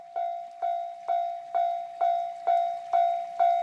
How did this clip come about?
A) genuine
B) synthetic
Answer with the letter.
A